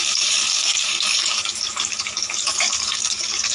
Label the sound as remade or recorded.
remade